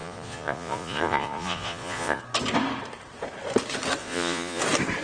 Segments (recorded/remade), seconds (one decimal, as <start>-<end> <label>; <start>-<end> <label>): 0.0-2.2 remade; 2.2-4.0 recorded; 4.0-4.6 remade; 4.6-5.0 recorded